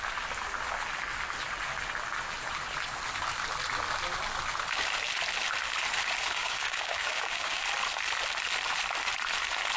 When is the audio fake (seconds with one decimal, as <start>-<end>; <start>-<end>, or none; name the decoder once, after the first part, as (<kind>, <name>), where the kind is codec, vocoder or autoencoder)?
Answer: 6.4-7.6 (codec, DAC)